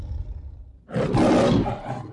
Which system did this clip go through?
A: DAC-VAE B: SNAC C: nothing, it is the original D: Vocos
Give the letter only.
C